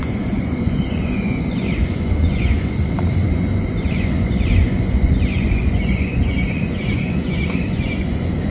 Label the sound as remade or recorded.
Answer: remade